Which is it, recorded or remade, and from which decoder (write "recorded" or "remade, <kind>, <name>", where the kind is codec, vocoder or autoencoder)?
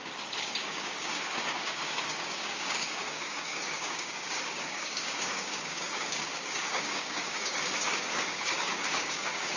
remade, codec, DAC